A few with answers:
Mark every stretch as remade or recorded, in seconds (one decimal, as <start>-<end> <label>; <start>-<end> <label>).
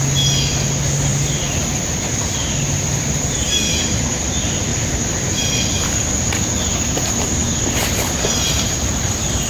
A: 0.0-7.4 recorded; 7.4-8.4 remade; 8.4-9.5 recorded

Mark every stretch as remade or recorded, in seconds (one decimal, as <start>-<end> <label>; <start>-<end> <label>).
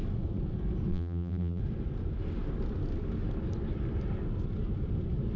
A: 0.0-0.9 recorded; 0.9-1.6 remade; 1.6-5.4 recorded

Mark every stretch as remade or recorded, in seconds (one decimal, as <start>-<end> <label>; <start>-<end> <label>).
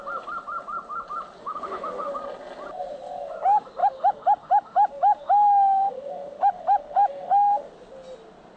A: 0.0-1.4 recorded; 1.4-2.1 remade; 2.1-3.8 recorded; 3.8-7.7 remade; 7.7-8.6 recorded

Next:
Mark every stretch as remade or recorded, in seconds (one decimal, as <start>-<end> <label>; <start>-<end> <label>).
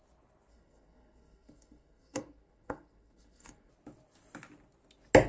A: 0.0-0.5 recorded; 0.5-3.7 remade; 3.7-5.3 recorded